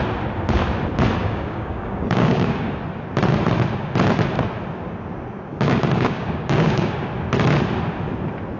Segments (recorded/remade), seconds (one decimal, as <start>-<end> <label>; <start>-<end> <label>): 0.0-1.2 recorded; 1.2-2.7 remade; 2.7-5.5 recorded; 5.5-6.9 remade; 6.9-8.6 recorded